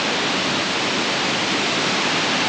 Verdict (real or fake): real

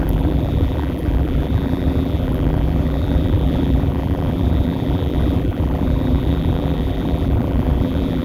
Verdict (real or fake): fake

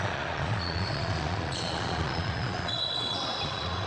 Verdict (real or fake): fake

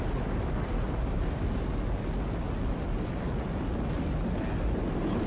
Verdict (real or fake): real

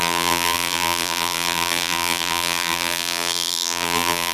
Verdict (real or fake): fake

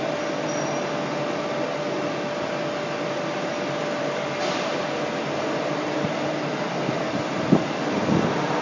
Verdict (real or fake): real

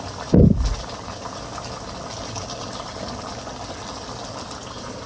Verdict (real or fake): real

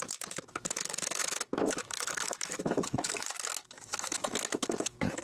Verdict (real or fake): fake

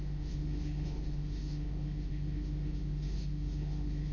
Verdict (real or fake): fake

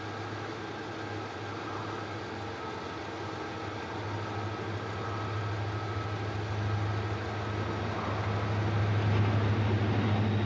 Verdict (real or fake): real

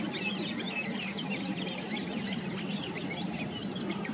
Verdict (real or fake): real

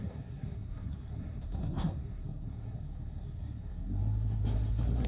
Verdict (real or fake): fake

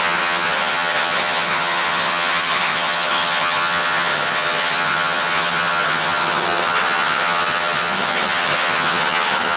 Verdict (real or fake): fake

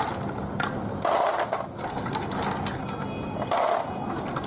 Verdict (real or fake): real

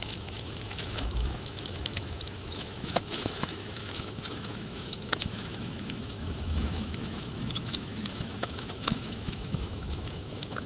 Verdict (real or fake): fake